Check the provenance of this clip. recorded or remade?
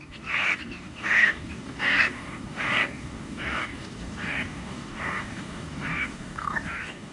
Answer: remade